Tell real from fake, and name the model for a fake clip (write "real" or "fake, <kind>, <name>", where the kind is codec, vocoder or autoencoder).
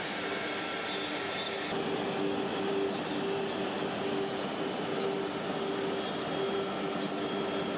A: real